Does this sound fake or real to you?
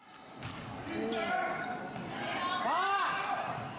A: real